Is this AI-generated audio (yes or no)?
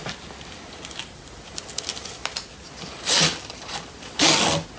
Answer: no